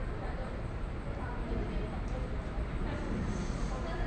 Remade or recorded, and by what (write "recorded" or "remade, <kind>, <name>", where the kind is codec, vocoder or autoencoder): remade, vocoder, BigVGAN v2